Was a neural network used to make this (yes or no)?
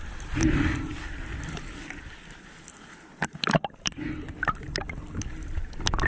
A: no